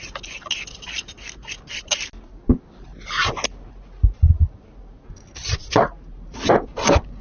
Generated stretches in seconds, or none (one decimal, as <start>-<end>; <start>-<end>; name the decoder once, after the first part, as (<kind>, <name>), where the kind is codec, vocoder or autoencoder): none